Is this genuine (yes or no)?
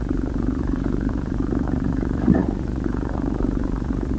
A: no